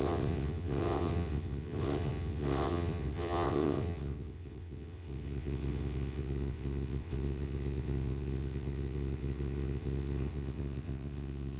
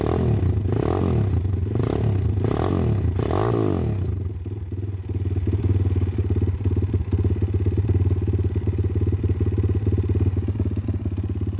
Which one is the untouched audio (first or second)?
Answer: second